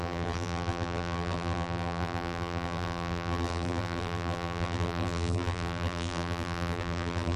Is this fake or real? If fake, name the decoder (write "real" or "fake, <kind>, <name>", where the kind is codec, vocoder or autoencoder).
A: fake, vocoder, BigVGAN v2